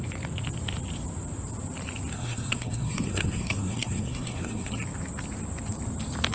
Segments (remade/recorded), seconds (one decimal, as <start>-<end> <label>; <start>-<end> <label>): 0.0-2.1 recorded; 2.1-4.7 remade; 4.7-6.3 recorded